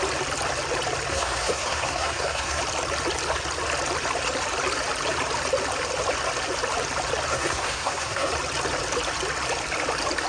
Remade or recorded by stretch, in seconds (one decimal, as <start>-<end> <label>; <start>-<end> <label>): 0.0-1.1 recorded; 1.1-2.6 remade; 2.6-7.3 recorded; 7.3-8.3 remade; 8.3-10.3 recorded

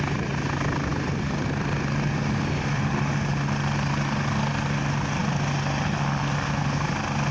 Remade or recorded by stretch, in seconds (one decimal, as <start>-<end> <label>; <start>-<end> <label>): 0.0-7.3 recorded

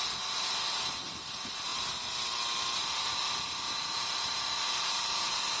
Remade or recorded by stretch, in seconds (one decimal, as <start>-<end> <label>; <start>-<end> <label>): 0.0-5.6 recorded

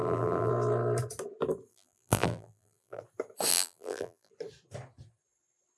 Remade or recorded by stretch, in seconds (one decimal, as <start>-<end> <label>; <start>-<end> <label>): 0.0-0.5 remade; 0.5-1.7 recorded; 1.7-3.0 remade; 3.0-3.5 recorded; 3.5-4.3 remade; 4.3-5.8 recorded

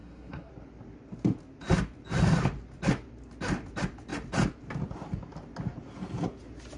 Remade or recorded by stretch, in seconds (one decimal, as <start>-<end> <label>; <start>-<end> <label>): 0.0-0.5 remade; 0.5-6.8 recorded

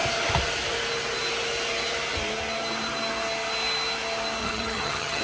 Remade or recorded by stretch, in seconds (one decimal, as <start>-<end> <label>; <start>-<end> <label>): 0.0-4.4 recorded; 4.4-5.2 remade

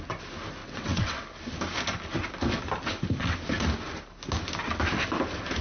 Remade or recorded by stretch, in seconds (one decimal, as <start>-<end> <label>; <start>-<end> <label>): 0.0-0.6 recorded; 0.6-1.2 remade; 1.2-5.6 recorded